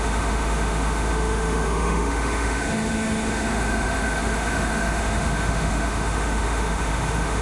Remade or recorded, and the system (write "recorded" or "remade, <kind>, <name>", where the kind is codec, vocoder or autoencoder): remade, autoencoder, DAC-VAE